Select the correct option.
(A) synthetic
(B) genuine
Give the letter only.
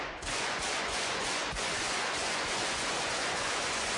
A